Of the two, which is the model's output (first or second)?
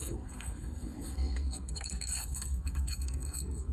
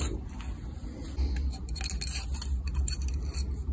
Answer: first